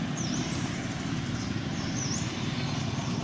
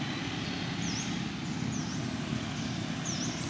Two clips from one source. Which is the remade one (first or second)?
first